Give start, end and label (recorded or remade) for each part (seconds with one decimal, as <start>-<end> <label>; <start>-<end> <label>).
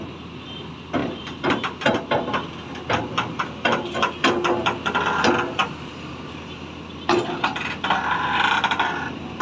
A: 0.0-1.0 recorded; 1.0-2.0 remade; 2.0-5.6 recorded; 5.6-6.1 remade; 6.1-7.5 recorded; 7.5-9.4 remade